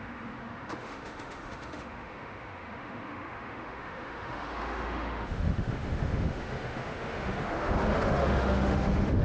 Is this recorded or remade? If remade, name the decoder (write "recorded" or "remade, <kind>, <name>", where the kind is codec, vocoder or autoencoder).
remade, autoencoder, DAC-VAE